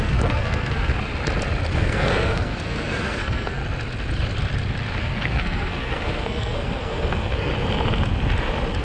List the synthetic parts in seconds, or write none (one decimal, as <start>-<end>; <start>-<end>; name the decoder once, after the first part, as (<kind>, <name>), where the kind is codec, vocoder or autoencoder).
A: 0.0-0.9 (codec, SNAC); 1.7-3.6; 5.0-7.5